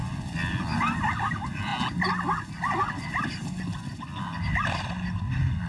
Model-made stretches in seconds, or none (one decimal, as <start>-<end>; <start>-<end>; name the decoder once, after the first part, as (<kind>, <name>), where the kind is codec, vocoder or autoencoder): none